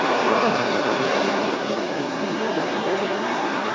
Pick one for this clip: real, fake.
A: fake